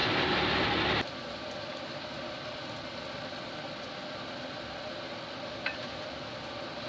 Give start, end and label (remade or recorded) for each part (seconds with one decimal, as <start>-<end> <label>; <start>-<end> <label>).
0.0-6.9 recorded